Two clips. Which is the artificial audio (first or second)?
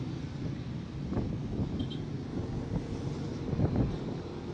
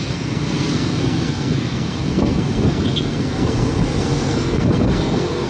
second